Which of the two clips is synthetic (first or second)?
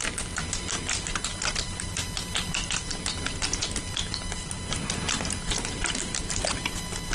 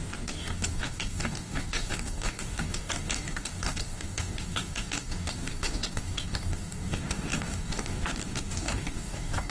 second